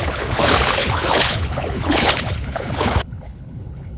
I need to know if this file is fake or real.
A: fake